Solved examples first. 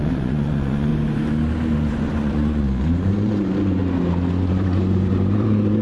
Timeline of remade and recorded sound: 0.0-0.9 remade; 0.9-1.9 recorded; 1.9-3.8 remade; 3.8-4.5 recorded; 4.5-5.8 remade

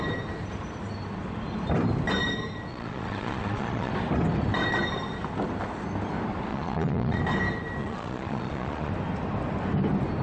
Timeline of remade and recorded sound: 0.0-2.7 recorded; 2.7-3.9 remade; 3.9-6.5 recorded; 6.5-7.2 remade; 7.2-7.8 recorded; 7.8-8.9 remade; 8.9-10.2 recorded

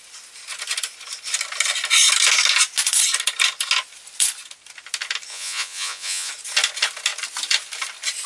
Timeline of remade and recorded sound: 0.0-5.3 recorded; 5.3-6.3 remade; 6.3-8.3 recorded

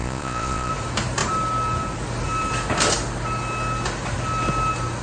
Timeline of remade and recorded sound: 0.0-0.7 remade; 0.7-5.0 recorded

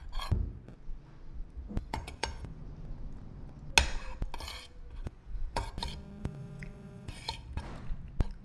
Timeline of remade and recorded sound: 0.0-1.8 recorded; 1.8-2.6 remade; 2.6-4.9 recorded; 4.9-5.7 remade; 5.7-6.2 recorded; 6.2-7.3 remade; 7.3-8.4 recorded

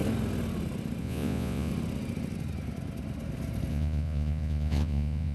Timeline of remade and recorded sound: 0.0-1.0 recorded; 1.0-1.7 remade; 1.7-3.7 recorded; 3.7-5.3 remade